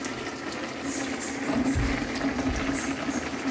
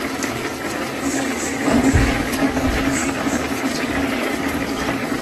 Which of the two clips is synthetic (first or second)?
second